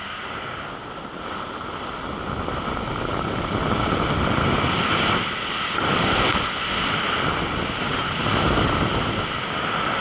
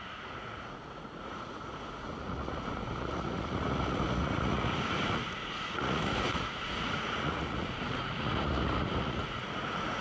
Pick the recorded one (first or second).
first